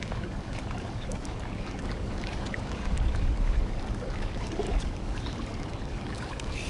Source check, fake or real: fake